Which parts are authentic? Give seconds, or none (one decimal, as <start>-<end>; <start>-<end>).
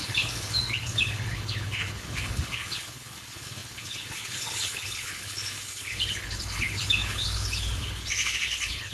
none